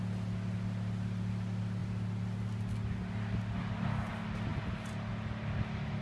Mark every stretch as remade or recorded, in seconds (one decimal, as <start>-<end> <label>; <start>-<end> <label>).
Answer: 0.0-6.0 recorded